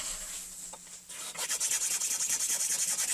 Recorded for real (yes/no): yes